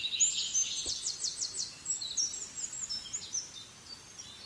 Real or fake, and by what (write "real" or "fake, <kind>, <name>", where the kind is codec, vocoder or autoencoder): real